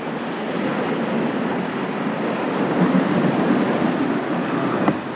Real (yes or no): yes